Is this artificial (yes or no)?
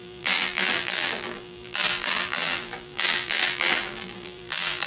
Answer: yes